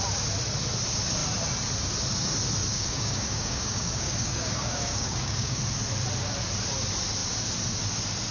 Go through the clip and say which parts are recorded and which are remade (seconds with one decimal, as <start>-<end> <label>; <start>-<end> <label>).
0.0-2.7 recorded; 2.7-5.6 remade; 5.6-8.3 recorded